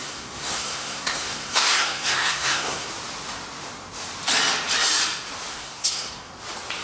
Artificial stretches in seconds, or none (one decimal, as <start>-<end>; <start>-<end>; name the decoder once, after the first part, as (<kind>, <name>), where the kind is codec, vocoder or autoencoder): 0.0-2.9 (codec, SNAC); 5.5-6.3